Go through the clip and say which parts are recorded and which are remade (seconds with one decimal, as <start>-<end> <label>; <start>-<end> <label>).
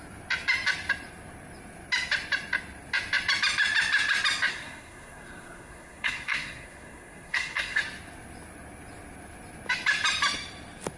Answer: 0.0-4.5 recorded; 4.5-7.8 remade; 7.8-11.0 recorded